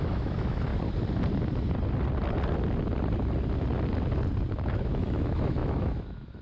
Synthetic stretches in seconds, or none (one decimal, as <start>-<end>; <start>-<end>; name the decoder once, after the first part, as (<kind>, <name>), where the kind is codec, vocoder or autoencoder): 0.0-0.7 (autoencoder, DAC-VAE); 4.5-6.4